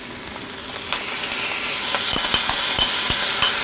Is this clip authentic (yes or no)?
yes